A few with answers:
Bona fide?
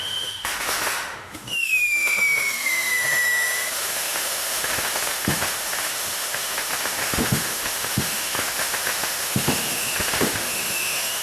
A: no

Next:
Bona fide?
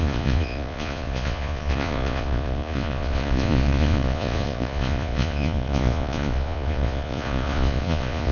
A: no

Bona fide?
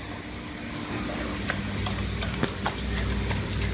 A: yes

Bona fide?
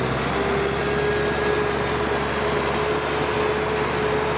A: yes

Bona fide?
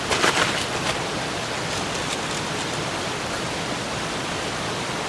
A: yes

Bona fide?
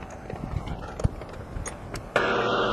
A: yes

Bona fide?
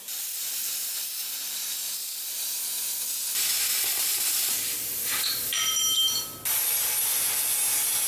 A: yes